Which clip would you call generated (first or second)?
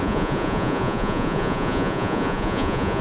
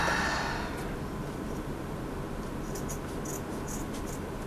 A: first